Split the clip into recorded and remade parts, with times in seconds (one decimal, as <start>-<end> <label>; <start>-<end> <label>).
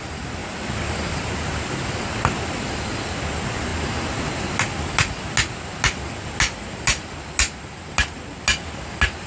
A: 0.0-9.3 recorded